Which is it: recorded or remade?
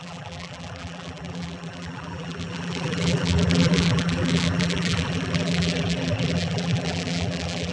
remade